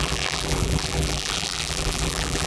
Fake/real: fake